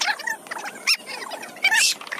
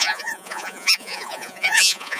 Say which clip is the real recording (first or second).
first